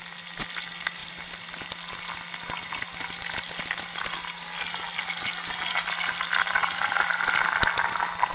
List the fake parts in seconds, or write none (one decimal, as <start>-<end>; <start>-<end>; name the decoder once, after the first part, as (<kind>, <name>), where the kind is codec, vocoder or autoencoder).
none